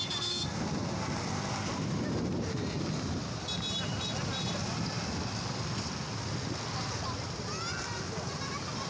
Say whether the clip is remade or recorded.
recorded